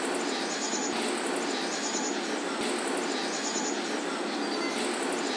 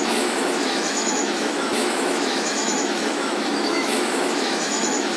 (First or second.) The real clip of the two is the first